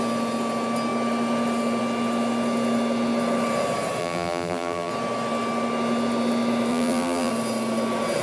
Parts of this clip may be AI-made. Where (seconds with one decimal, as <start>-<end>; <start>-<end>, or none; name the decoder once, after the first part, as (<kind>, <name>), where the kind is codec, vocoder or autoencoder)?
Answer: 4.0-4.9 (vocoder, BigVGAN v2); 6.7-7.3

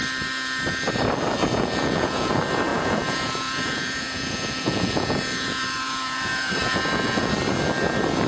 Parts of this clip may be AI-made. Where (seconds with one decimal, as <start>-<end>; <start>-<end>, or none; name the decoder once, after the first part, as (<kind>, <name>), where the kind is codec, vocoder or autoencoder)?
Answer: 1.5-2.3 (vocoder, Vocos); 2.7-7.3

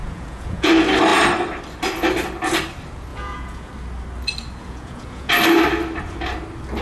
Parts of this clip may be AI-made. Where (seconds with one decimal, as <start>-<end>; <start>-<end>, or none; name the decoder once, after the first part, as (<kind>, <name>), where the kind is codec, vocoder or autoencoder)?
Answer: 0.0-0.7 (vocoder, Vocos); 3.1-3.7; 4.6-5.3

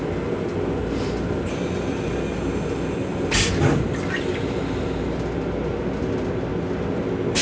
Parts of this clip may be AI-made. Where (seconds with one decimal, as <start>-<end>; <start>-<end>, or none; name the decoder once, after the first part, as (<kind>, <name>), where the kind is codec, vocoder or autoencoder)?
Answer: none

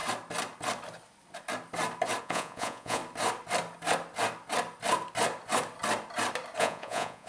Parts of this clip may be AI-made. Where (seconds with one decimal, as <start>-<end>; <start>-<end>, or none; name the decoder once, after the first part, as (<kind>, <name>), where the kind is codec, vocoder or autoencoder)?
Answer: 2.2-3.0 (vocoder, Vocos); 6.6-7.3

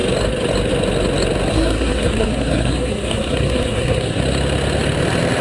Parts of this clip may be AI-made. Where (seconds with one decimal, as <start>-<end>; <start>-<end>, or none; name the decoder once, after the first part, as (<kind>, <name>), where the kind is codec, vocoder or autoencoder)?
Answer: 1.5-4.2 (codec, SNAC)

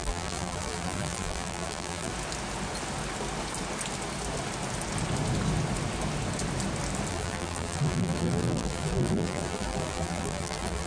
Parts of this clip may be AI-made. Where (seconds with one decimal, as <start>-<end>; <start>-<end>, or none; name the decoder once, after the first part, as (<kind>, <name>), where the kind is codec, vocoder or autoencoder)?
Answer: 0.0-2.1 (vocoder, BigVGAN v2); 7.1-10.9

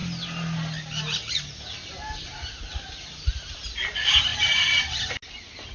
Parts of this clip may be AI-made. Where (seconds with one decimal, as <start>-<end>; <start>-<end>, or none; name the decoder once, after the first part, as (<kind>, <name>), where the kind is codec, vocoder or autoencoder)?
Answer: none